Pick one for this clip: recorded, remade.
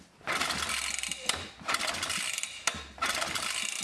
recorded